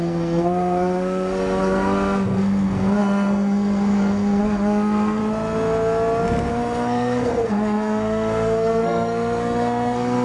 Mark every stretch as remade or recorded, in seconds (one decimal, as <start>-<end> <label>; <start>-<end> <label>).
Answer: 0.0-5.2 remade; 5.2-6.5 recorded; 6.5-10.2 remade